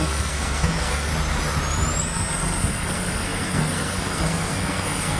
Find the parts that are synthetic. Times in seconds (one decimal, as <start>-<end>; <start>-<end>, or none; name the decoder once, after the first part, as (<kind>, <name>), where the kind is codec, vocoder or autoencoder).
0.0-1.1 (codec, SNAC); 2.0-5.2